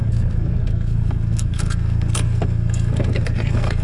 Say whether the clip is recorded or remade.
remade